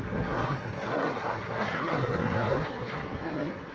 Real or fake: fake